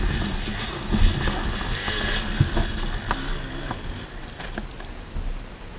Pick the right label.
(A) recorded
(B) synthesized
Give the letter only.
A